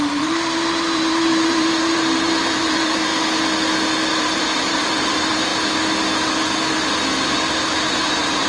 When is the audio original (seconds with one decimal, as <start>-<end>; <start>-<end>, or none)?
3.1-4.1; 5.5-7.9